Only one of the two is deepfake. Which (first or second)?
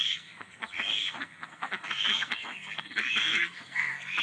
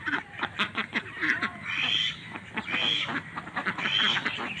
first